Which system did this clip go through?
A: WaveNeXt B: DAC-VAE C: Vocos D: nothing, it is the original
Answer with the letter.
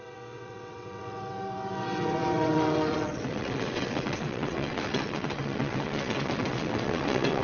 A